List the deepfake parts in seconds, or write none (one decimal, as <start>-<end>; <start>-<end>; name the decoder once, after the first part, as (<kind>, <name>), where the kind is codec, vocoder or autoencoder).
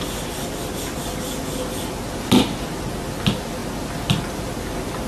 none